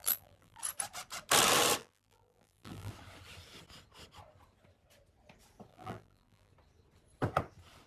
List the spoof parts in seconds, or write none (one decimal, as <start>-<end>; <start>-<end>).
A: 0.0-0.6; 1.8-2.9; 5.7-6.5